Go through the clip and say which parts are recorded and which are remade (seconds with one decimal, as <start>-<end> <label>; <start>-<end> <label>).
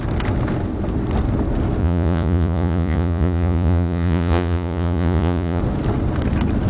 0.0-1.8 recorded; 1.8-5.6 remade; 5.6-6.7 recorded